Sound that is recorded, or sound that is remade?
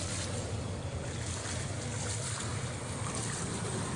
recorded